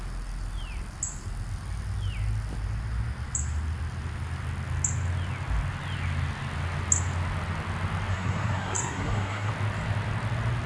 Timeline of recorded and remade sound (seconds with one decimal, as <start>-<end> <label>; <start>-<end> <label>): 0.0-8.1 recorded; 8.1-9.5 remade; 9.5-10.7 recorded